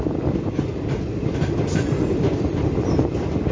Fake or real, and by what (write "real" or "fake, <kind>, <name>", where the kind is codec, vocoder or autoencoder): real